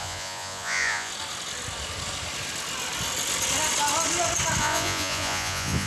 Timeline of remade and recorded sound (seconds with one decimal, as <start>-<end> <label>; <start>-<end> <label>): 0.0-1.1 remade; 1.1-4.6 recorded; 4.6-5.9 remade